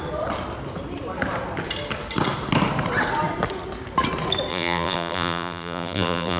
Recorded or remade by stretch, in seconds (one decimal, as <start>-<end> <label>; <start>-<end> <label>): 0.0-4.5 recorded; 4.5-6.4 remade